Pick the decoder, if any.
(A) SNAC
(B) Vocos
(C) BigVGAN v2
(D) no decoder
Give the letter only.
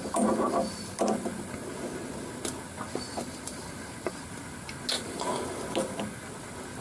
D